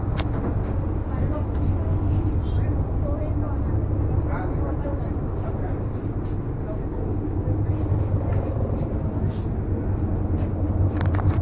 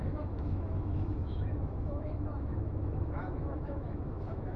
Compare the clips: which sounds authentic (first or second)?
first